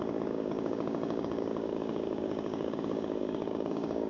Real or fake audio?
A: fake